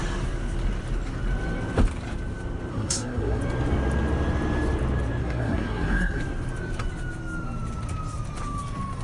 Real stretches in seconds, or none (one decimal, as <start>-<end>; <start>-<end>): 0.0-2.7; 3.4-5.2; 6.2-9.0